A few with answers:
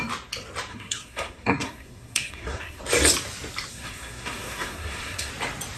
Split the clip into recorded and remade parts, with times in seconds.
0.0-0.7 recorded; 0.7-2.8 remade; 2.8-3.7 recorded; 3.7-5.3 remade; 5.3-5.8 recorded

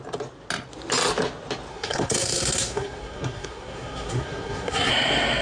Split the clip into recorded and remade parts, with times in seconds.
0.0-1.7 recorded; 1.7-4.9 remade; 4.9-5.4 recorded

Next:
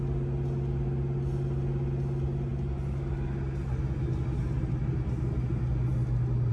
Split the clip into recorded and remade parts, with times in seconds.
0.0-6.5 recorded

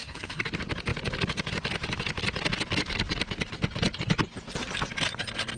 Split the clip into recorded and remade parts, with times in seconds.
0.0-0.5 remade; 0.5-5.6 recorded

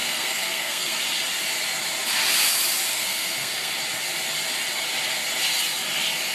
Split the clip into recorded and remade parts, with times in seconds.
0.0-0.9 remade; 0.9-2.9 recorded; 2.9-3.7 remade; 3.7-6.3 recorded